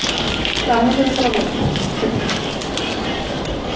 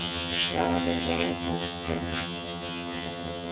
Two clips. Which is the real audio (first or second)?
first